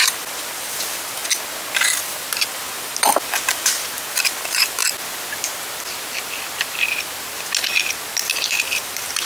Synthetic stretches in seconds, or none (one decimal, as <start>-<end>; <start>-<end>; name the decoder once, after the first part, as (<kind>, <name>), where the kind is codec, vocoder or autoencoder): 0.0-1.2 (vocoder, BigVGAN v2); 2.5-4.8; 8.5-9.3